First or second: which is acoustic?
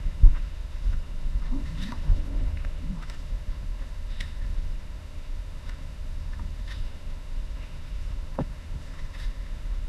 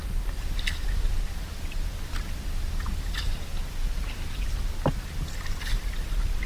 second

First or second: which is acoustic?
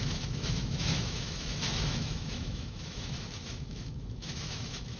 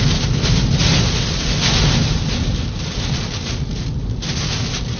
second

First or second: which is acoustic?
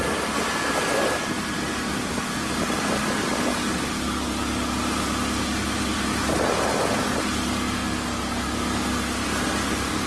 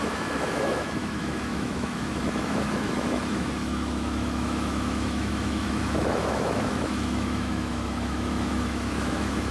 first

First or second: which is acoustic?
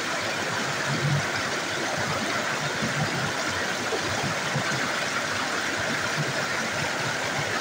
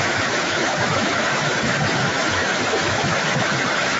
first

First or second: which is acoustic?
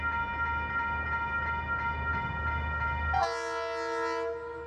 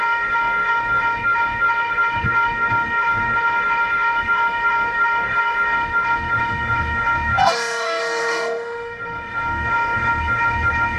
first